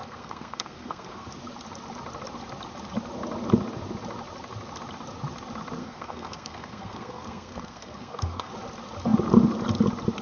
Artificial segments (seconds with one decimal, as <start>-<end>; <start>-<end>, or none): 0.0-1.3; 5.8-8.5

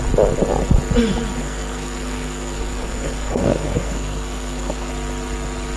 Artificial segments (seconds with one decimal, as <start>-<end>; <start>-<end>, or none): 1.4-4.9

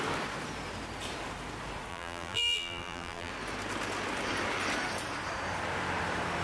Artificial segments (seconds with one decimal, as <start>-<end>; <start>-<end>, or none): 1.9-3.3

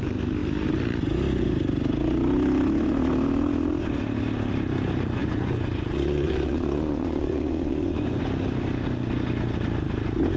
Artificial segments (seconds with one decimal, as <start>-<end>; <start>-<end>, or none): 5.2-8.2

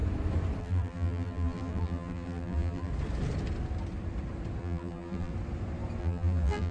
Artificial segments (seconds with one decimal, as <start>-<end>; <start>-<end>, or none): 0.6-2.9; 4.6-5.3; 6.0-6.7

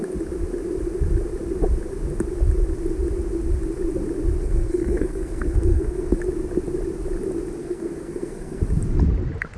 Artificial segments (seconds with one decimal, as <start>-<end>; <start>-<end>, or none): 4.4-6.2; 7.6-8.6

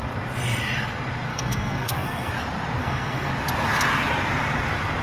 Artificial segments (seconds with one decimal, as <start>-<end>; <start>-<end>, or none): 1.3-2.3; 2.8-3.3